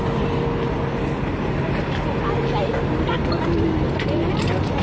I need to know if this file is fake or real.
real